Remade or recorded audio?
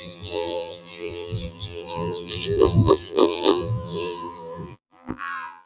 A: remade